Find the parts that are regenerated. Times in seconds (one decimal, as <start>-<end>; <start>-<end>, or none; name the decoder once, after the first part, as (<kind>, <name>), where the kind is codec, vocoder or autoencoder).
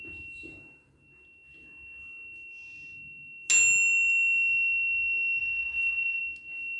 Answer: 5.4-6.2 (codec, SNAC)